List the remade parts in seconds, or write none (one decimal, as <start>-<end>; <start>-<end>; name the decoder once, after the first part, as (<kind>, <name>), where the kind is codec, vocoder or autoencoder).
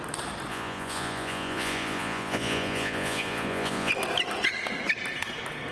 0.5-3.9 (vocoder, Vocos)